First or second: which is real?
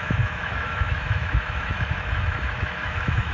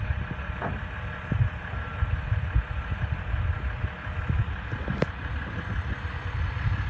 second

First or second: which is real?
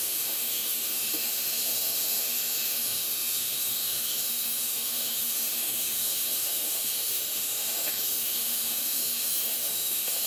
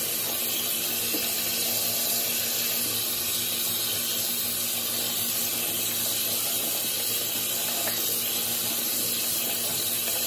second